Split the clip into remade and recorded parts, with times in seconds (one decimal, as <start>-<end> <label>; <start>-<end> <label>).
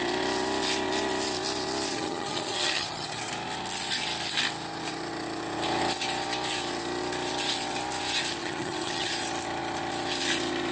0.0-1.9 recorded; 1.9-3.3 remade; 3.3-8.4 recorded; 8.4-9.1 remade; 9.1-10.7 recorded